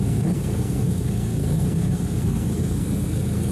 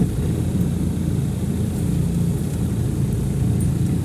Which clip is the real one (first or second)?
second